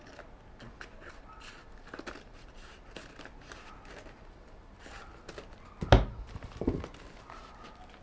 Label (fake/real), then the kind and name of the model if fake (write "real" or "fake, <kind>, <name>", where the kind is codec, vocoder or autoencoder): real